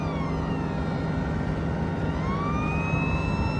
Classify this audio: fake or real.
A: real